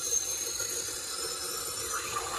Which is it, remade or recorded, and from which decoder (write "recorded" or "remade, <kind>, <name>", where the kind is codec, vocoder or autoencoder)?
recorded